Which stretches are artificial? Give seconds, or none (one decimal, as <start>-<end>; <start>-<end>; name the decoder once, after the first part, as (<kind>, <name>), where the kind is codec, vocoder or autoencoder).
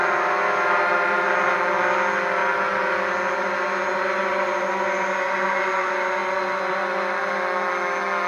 none